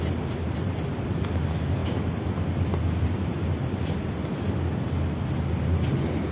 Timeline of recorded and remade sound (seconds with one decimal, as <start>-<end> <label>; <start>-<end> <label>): 0.0-6.3 recorded